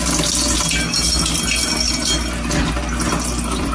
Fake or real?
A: real